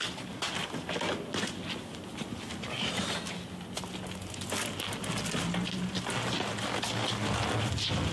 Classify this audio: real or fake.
real